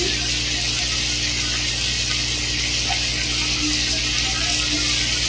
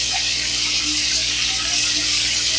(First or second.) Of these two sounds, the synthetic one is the second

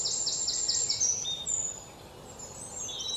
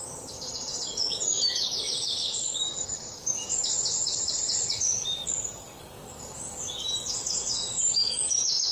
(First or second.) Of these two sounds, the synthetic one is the second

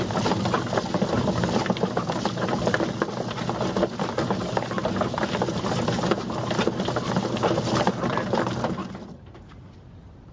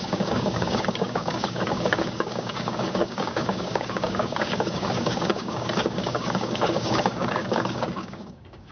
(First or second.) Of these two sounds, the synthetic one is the second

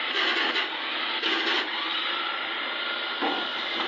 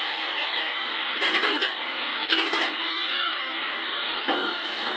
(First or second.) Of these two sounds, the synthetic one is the second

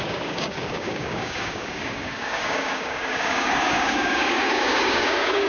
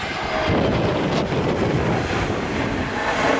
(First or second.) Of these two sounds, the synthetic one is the first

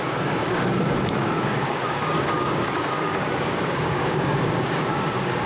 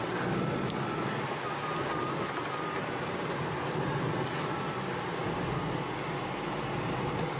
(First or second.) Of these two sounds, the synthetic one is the first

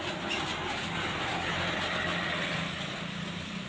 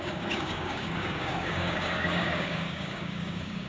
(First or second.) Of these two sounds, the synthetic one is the second